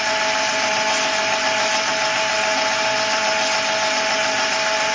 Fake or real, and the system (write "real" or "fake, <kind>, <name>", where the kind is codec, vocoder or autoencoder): real